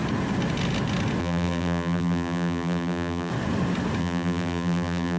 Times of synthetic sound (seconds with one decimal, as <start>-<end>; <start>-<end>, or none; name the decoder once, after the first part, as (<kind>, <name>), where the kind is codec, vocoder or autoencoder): 1.2-3.3 (vocoder, BigVGAN v2); 4.0-5.2